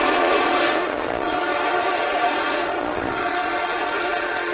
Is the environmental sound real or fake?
fake